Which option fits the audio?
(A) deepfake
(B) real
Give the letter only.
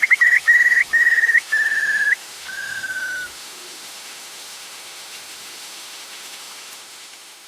A